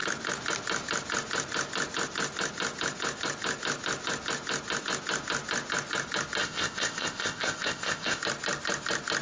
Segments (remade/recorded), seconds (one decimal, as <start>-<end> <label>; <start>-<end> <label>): 0.0-6.4 recorded; 6.4-8.2 remade; 8.2-9.2 recorded

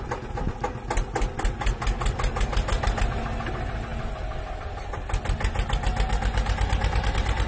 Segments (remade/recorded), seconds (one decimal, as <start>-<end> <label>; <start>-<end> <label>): 0.0-7.5 recorded

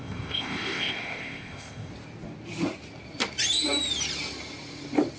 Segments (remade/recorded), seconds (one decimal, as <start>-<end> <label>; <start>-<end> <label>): 0.0-1.9 remade; 1.9-5.2 recorded

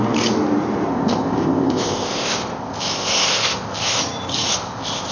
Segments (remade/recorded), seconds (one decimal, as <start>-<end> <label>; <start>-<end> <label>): 0.0-0.9 recorded; 0.9-4.0 remade; 4.0-4.5 recorded; 4.5-5.1 remade

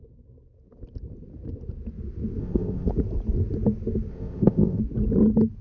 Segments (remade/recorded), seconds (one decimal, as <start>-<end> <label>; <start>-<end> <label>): 0.0-2.4 recorded; 2.4-2.9 remade; 2.9-4.1 recorded; 4.1-4.8 remade; 4.8-5.6 recorded